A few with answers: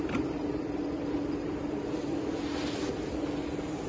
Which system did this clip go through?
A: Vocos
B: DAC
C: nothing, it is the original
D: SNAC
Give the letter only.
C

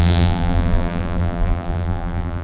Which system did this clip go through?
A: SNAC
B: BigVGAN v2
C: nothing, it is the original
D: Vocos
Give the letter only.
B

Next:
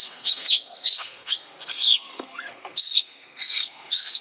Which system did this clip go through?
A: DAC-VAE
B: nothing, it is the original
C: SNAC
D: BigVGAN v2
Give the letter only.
C